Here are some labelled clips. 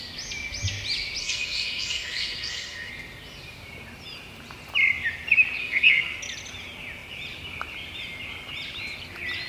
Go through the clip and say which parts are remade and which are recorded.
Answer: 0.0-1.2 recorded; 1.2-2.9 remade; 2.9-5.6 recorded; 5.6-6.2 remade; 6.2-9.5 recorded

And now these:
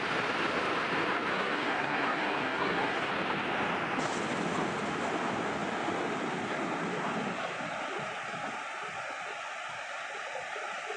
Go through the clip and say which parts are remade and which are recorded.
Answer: 0.0-1.3 recorded; 1.3-3.1 remade; 3.1-11.0 recorded

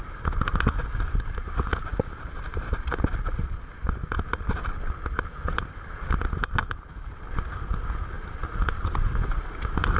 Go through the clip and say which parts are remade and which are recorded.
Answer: 0.0-10.0 recorded

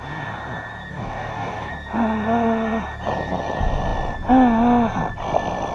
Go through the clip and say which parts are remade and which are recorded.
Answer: 0.0-0.9 recorded; 0.9-1.7 remade; 1.7-5.7 recorded

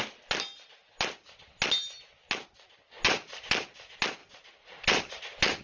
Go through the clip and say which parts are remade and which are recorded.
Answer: 0.0-5.6 recorded

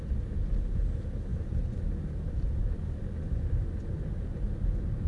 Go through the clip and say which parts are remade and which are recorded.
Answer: 0.0-5.1 recorded

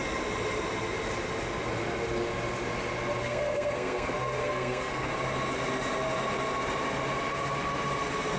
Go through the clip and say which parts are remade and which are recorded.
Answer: 0.0-3.2 recorded; 3.2-5.1 remade; 5.1-8.4 recorded

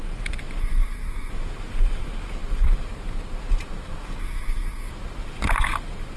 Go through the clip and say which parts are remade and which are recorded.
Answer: 0.0-0.6 recorded; 0.6-1.3 remade; 1.3-4.2 recorded; 4.2-4.9 remade; 4.9-6.2 recorded